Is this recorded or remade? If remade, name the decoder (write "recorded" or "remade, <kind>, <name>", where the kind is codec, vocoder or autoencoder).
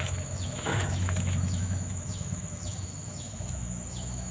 remade, autoencoder, DAC-VAE